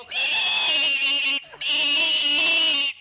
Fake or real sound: real